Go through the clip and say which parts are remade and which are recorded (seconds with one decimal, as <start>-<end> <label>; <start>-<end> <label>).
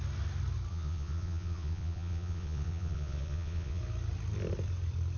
0.0-0.7 recorded; 0.7-3.8 remade; 3.8-5.2 recorded